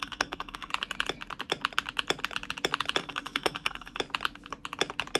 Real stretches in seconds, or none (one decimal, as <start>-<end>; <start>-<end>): 0.7-3.0; 4.0-5.2